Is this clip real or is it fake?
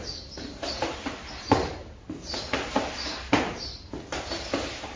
real